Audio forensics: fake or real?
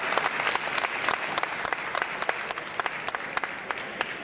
real